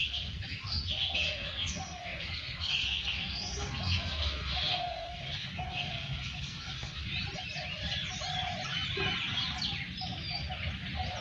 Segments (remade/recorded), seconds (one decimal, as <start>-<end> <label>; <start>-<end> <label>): 0.0-7.1 remade; 7.1-11.2 recorded

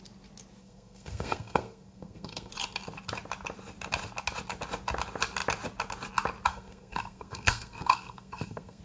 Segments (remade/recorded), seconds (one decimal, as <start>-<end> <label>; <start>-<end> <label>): 0.0-0.6 recorded; 0.6-2.5 remade; 2.5-6.5 recorded; 6.5-8.8 remade

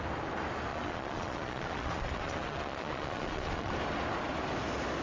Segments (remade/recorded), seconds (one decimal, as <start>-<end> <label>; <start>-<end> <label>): 0.0-0.7 recorded; 0.7-3.7 remade; 3.7-5.0 recorded

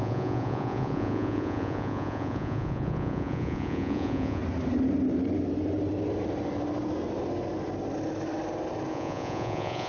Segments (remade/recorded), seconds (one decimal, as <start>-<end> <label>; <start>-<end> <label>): 0.0-4.4 remade; 4.4-8.9 recorded; 8.9-9.9 remade

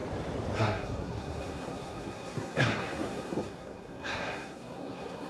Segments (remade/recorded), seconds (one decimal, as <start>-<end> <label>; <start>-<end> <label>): 0.0-0.6 recorded; 0.6-5.3 remade

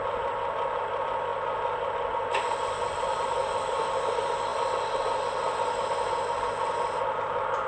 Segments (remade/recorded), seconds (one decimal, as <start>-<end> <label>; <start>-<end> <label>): 0.0-7.7 recorded

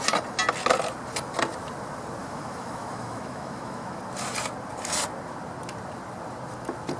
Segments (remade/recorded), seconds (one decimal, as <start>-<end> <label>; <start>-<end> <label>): 0.0-2.2 recorded; 2.2-4.0 remade; 4.0-7.0 recorded